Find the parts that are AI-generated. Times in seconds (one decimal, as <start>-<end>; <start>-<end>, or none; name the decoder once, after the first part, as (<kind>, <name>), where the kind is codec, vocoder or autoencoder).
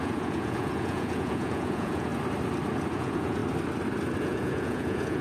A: 0.0-2.1 (vocoder, Vocos); 2.9-3.4; 4.2-5.2